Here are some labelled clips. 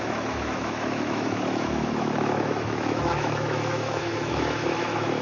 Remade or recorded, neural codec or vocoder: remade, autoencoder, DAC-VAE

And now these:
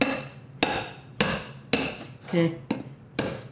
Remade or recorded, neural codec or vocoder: recorded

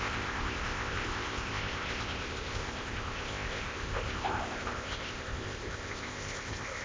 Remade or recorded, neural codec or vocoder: remade, codec, ZipCodec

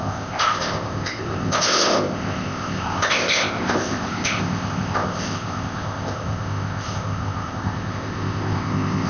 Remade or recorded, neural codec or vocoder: remade, codec, ZipCodec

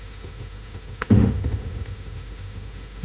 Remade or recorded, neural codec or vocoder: remade, autoencoder, DAC-VAE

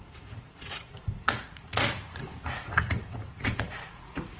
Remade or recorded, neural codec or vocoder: remade, vocoder, Vocos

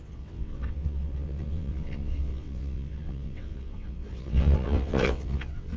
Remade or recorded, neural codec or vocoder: remade, vocoder, WaveNeXt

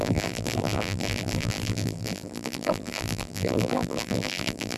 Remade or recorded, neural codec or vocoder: remade, vocoder, BigVGAN v2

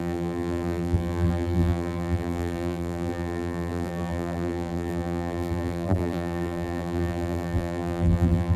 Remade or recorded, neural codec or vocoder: remade, vocoder, BigVGAN v2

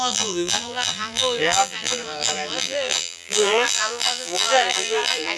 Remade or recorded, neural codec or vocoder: remade, vocoder, BigVGAN v2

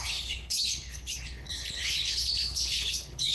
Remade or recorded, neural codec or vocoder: remade, codec, HILCodec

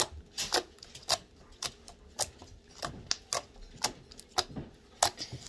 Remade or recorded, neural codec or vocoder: recorded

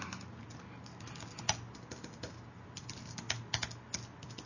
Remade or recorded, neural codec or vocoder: recorded